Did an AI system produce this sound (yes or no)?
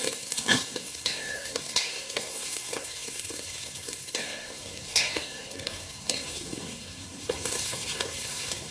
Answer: yes